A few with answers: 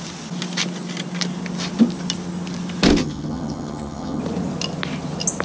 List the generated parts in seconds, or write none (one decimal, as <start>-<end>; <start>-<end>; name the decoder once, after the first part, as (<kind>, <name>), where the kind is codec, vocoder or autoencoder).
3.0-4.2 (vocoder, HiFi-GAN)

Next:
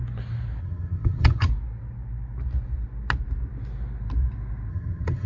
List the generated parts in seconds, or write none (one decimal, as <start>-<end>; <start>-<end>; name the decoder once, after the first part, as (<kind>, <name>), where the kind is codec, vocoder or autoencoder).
0.6-1.5 (vocoder, HiFi-GAN); 4.7-5.3

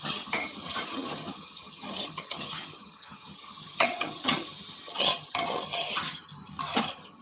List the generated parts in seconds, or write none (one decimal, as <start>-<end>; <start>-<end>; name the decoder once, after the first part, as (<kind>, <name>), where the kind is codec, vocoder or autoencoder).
0.0-6.3 (vocoder, HiFi-GAN); 6.8-7.2

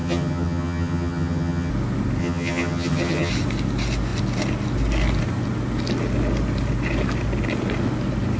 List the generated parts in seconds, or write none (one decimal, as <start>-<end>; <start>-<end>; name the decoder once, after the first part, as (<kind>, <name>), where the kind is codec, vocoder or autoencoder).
0.0-1.7 (vocoder, HiFi-GAN); 2.2-3.3

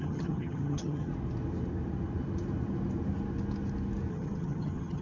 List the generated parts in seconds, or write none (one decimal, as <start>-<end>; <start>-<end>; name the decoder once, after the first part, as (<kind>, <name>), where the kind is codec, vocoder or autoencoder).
0.0-1.1 (vocoder, HiFi-GAN); 4.1-5.0

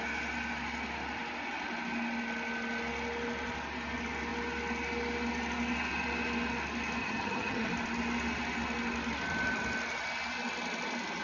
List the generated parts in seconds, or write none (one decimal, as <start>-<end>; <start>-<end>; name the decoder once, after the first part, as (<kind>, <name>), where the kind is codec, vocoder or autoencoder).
7.0-7.7 (vocoder, HiFi-GAN)

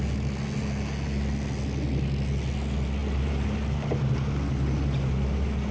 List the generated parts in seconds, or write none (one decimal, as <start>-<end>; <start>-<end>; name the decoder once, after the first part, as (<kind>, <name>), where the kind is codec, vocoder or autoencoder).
none